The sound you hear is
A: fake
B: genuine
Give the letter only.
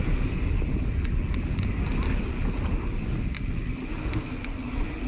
B